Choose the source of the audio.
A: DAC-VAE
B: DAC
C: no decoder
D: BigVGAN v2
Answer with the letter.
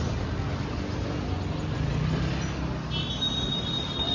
C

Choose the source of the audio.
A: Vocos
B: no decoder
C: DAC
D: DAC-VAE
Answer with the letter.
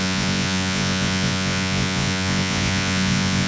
A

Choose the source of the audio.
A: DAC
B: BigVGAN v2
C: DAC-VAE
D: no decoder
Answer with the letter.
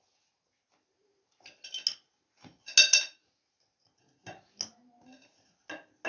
D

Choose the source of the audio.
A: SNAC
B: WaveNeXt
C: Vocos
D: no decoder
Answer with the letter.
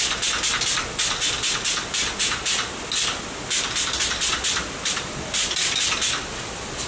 D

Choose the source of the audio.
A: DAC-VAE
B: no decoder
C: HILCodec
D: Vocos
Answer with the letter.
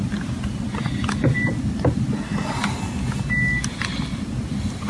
B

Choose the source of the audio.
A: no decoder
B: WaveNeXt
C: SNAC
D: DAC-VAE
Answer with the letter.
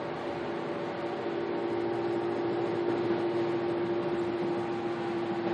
A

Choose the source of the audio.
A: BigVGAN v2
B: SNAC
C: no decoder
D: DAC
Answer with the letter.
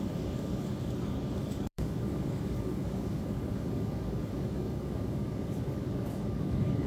D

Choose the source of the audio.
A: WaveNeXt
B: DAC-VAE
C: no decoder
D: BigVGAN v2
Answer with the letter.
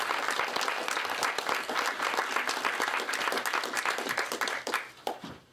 C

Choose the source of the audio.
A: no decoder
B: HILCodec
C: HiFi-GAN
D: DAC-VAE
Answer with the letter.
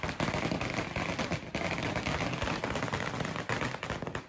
A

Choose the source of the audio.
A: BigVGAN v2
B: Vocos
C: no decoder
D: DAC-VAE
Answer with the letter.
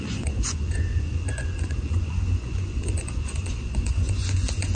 B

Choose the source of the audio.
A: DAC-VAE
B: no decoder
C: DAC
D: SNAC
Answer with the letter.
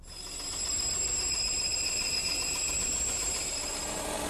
B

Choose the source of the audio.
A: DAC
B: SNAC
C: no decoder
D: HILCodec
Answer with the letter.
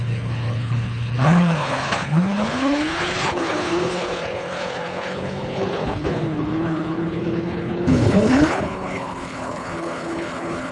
D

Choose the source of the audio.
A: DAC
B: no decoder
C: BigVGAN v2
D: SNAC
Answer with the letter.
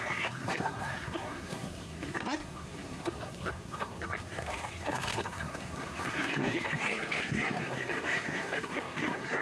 D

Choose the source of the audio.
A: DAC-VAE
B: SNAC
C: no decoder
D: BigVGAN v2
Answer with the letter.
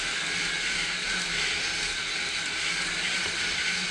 C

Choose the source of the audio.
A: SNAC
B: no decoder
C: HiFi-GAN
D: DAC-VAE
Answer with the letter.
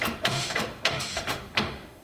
D